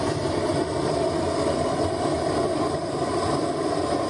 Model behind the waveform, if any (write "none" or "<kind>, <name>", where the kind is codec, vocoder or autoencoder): vocoder, BigVGAN v2